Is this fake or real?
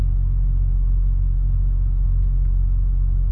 real